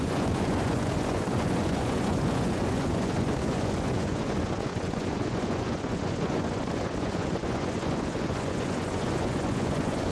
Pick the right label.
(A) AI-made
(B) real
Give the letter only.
A